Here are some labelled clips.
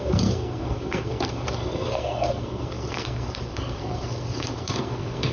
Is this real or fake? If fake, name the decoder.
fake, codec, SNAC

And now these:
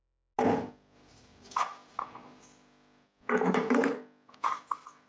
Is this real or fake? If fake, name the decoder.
real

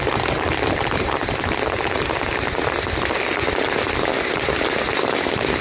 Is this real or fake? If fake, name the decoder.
real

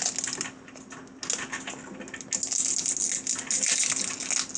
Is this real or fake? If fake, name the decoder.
real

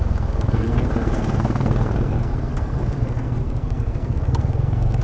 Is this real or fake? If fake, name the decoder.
fake, codec, SNAC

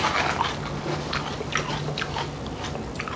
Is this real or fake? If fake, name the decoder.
real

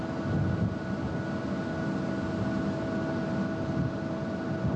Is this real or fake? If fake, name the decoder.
real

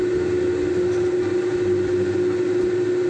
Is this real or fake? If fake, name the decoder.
real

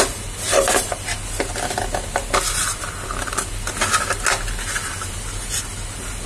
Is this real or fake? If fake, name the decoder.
real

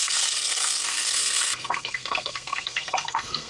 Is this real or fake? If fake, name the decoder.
fake, codec, SNAC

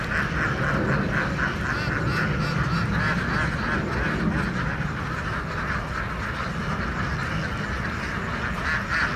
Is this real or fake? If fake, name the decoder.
real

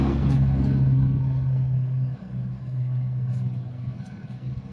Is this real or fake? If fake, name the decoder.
fake, codec, SNAC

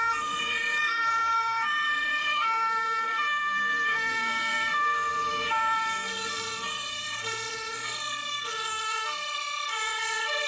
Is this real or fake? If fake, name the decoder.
fake, codec, SNAC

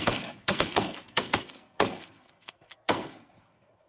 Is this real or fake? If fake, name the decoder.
fake, codec, SNAC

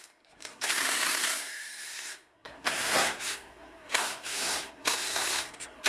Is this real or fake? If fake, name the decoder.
fake, codec, SNAC